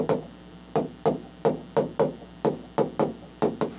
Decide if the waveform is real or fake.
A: real